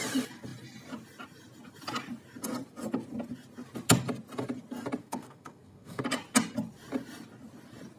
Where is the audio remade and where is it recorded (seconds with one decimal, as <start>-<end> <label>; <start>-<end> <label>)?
0.0-5.0 recorded; 5.0-6.0 remade; 6.0-8.0 recorded